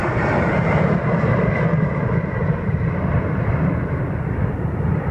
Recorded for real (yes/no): yes